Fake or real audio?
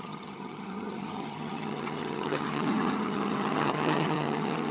fake